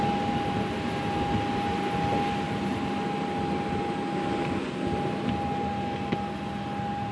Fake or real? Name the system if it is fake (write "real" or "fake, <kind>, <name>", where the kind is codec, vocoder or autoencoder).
real